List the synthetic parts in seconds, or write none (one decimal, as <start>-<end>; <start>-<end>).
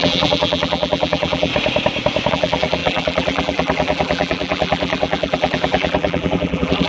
0.0-1.5; 2.3-6.9